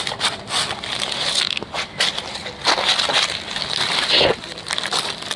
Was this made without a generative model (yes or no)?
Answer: yes